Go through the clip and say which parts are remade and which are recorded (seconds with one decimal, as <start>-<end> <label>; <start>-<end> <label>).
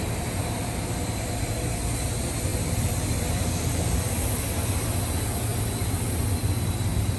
0.0-2.5 recorded; 2.5-4.4 remade; 4.4-7.2 recorded